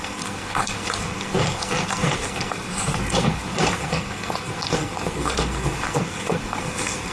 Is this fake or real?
fake